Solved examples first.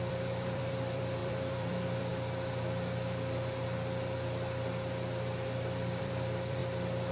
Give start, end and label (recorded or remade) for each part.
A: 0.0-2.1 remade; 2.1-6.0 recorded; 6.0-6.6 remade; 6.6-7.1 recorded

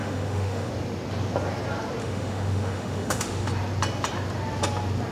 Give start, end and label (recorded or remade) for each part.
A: 0.0-0.7 remade; 0.7-2.0 recorded; 2.0-3.5 remade; 3.5-5.1 recorded

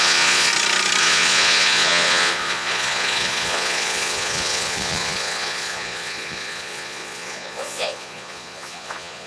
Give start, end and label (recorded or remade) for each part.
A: 0.0-0.5 remade; 0.5-1.0 recorded; 1.0-9.3 remade

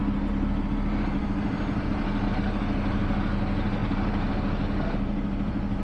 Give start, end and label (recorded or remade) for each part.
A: 0.0-5.8 recorded